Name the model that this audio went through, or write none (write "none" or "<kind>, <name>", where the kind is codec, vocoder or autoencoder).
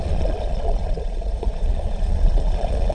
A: vocoder, Vocos